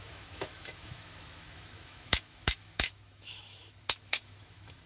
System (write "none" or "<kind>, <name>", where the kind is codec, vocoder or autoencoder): autoencoder, DAC-VAE